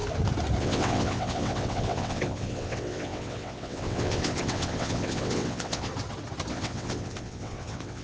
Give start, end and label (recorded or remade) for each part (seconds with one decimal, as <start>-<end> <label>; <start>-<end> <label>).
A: 0.0-0.6 recorded; 0.6-5.9 remade; 5.9-6.5 recorded; 6.5-8.0 remade